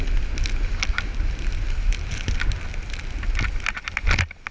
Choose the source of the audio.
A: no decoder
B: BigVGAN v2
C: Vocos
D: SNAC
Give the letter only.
A